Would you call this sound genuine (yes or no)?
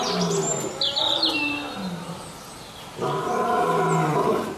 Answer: yes